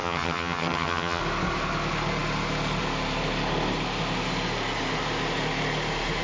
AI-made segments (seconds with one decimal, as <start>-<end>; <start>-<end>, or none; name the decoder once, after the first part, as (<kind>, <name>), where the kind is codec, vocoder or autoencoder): 0.0-1.2 (vocoder, HiFi-GAN)